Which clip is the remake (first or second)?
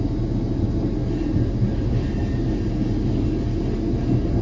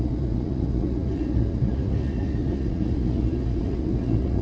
second